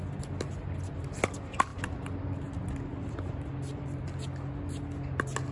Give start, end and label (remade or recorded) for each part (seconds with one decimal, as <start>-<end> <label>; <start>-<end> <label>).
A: 0.0-5.5 recorded